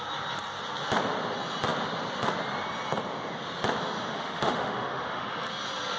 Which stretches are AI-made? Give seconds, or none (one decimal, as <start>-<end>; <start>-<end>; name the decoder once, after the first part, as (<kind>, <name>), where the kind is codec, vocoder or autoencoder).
4.1-5.2 (autoencoder, DAC-VAE)